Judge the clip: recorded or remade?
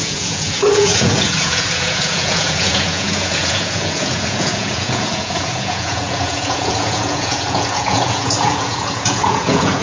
remade